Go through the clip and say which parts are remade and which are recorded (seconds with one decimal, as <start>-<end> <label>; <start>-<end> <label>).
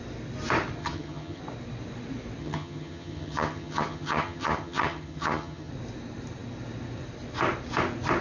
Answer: 0.0-0.8 recorded; 0.8-1.4 remade; 1.4-2.4 recorded; 2.4-5.7 remade; 5.7-8.2 recorded